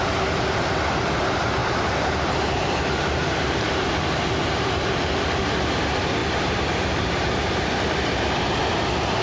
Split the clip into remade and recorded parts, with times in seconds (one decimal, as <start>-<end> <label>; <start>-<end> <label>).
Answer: 0.0-1.6 recorded; 1.6-3.9 remade; 3.9-6.2 recorded; 6.2-9.2 remade